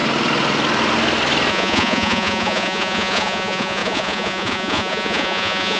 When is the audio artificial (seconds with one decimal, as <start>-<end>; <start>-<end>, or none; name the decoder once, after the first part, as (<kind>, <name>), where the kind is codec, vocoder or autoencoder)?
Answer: 1.5-5.8 (vocoder, Vocos)

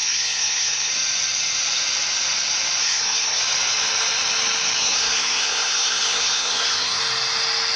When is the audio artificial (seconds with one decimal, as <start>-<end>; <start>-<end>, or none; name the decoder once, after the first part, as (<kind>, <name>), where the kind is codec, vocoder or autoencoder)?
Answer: 0.0-0.9 (codec, SNAC); 2.8-3.4; 4.8-7.0

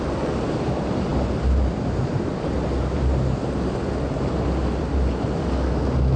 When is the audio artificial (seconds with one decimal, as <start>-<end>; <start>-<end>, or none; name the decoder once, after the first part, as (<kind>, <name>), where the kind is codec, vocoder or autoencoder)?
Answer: none

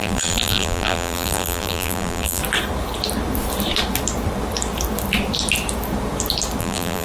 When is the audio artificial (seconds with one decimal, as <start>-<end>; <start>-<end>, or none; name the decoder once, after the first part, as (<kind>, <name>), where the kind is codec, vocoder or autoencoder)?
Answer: 0.0-2.4 (vocoder, BigVGAN v2); 6.6-7.0

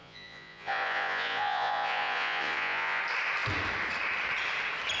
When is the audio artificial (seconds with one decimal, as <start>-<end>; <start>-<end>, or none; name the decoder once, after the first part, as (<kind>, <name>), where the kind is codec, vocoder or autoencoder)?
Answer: 0.0-3.0 (vocoder, Vocos)

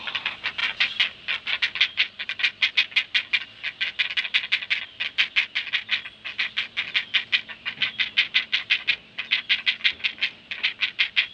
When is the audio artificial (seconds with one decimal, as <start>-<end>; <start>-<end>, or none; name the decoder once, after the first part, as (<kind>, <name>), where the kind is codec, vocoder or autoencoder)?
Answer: none